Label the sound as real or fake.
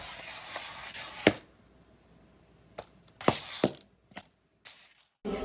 real